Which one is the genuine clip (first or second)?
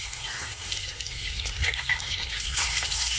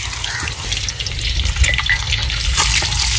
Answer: second